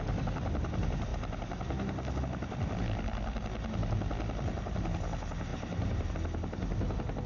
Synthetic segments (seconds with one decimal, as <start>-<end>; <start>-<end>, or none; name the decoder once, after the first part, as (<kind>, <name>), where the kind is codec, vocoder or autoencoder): 5.5-6.1 (vocoder, BigVGAN v2)